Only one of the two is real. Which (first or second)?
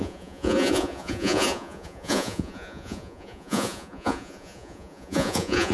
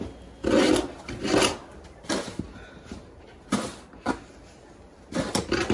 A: second